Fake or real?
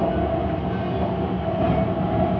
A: real